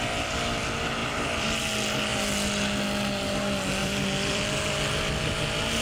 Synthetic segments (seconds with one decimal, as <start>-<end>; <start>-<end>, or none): 1.0-1.6; 3.8-4.4